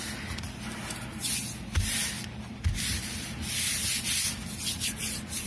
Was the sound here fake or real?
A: real